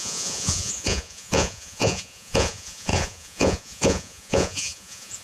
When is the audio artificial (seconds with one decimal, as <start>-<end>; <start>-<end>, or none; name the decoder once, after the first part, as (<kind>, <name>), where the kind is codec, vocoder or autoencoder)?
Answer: 0.0-5.2 (vocoder, Vocos)